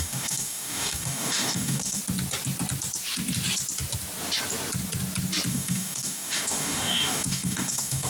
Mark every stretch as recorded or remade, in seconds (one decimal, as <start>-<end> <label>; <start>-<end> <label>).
0.0-2.0 remade; 2.0-5.5 recorded; 5.5-8.1 remade